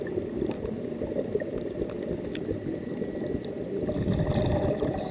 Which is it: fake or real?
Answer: real